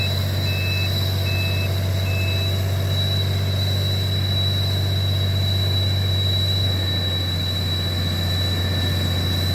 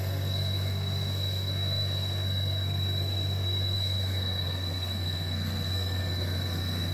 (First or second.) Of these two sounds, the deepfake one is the second